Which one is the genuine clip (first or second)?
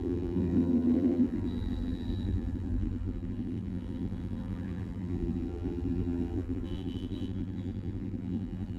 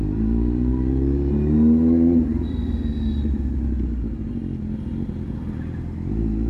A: second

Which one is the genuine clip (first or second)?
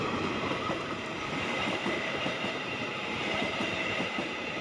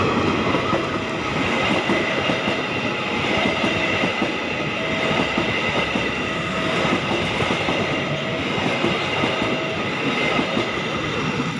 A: second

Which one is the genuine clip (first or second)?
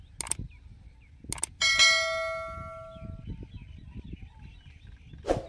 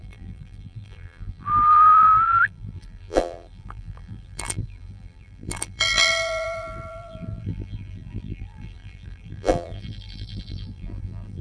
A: first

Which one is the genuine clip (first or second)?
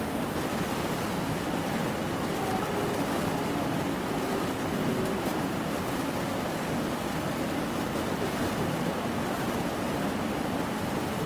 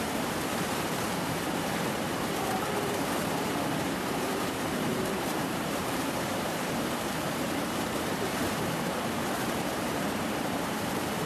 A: first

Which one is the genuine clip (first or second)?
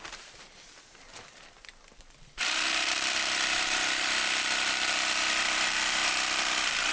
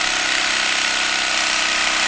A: second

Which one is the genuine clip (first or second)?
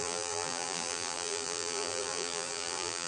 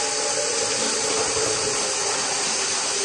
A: second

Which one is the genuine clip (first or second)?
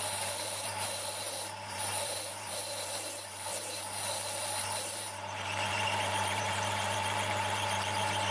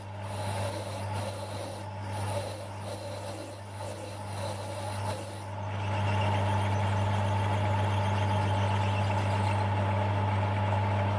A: second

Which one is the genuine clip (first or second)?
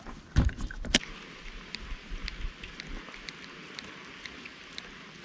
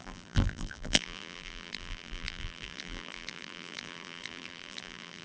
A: first